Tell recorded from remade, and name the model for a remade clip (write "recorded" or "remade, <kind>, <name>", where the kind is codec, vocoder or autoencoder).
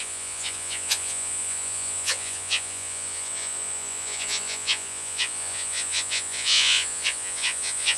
remade, vocoder, Vocos